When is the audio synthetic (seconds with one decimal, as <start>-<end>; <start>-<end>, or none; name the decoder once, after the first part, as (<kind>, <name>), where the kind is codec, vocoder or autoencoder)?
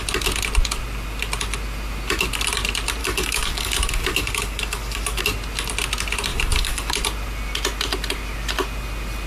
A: 3.0-5.2 (codec, DAC); 6.3-6.9